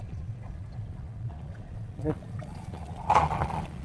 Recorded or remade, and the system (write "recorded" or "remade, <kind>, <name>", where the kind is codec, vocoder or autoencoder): remade, vocoder, Vocos